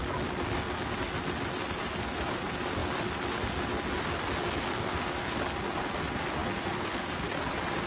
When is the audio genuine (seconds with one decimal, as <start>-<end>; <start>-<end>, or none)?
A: 0.0-7.9